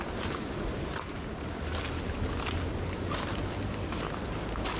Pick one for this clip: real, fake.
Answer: real